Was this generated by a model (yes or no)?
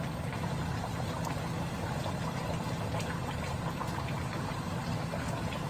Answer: no